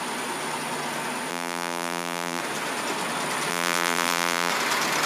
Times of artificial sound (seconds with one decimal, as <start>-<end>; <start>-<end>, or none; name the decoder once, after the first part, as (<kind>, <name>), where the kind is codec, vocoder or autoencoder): 1.3-2.4 (vocoder, BigVGAN v2); 3.5-4.5